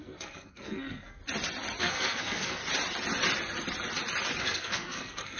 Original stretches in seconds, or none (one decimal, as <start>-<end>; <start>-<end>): 1.2-1.8; 2.6-4.4